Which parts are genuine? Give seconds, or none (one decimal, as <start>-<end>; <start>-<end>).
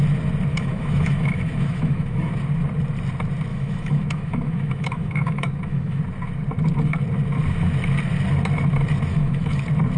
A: 0.0-0.5; 2.3-3.5; 6.0-9.1; 9.6-10.0